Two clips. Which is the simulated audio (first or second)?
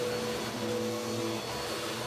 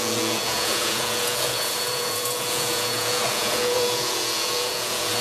second